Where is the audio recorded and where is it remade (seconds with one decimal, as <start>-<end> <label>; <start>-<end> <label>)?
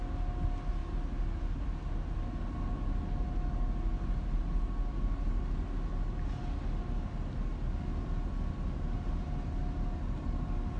0.0-10.8 recorded